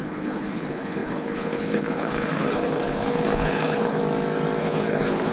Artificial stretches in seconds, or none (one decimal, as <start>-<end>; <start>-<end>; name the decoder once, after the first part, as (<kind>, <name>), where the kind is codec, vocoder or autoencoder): 0.0-4.0 (codec, HILCodec); 4.6-5.3